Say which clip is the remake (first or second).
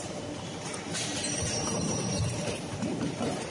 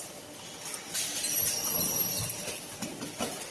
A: first